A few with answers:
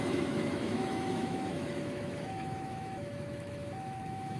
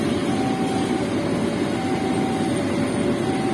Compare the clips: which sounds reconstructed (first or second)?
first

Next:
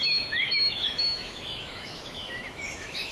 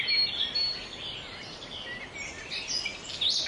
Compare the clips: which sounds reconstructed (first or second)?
first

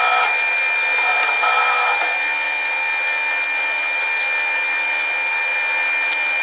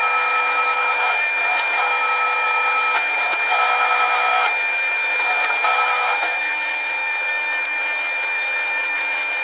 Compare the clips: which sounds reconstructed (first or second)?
second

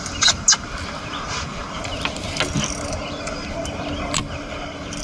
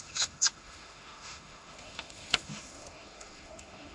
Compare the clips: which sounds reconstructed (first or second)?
second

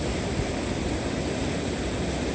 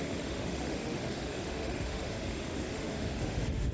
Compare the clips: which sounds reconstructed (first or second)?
second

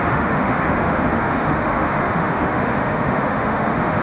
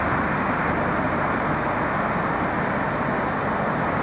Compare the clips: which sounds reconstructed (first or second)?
first